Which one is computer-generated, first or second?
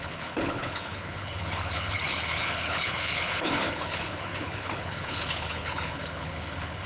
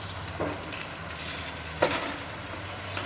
first